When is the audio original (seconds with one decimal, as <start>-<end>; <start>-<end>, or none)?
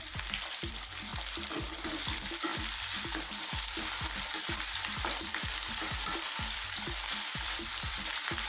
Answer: 1.1-1.6